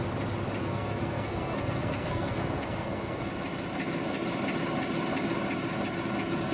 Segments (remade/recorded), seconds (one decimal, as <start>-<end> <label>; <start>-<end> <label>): 0.0-0.6 recorded; 0.6-3.3 remade; 3.3-6.5 recorded